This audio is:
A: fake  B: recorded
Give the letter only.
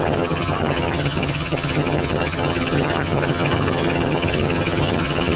A